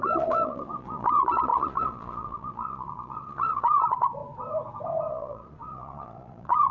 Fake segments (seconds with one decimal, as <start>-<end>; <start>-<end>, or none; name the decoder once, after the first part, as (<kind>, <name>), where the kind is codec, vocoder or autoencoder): 0.0-4.2 (vocoder, Vocos); 5.1-6.7